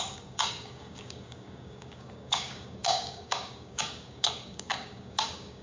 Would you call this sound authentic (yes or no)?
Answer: no